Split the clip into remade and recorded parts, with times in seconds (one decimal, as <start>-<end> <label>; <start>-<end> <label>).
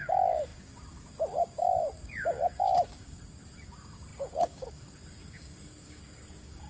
0.0-6.7 remade